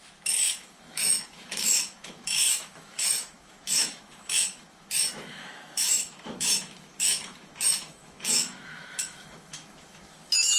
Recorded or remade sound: remade